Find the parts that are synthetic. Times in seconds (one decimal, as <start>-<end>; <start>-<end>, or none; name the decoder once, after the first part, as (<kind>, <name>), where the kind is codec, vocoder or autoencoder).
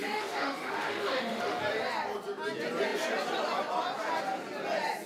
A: 0.0-1.6 (autoencoder, DAC-VAE)